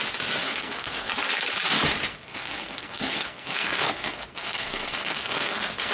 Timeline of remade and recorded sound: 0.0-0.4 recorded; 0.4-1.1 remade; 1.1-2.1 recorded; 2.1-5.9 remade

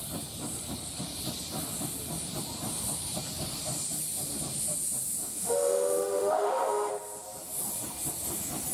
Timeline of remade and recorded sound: 0.0-5.2 recorded; 5.2-6.9 remade; 6.9-8.7 recorded

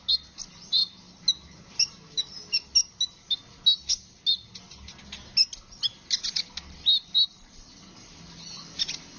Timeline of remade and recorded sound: 0.0-9.2 recorded

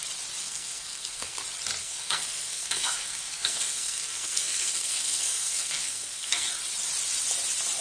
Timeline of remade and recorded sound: 0.0-0.4 recorded; 0.4-1.4 remade; 1.4-1.8 recorded; 1.8-6.5 remade; 6.5-7.8 recorded

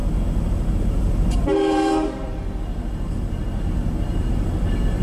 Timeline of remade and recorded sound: 0.0-0.8 recorded; 0.8-2.3 remade; 2.3-4.1 recorded; 4.1-5.0 remade

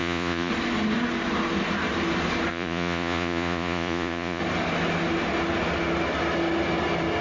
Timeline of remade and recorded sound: 0.0-0.5 remade; 0.5-2.5 recorded; 2.5-4.4 remade; 4.4-7.2 recorded